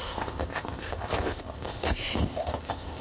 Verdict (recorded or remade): remade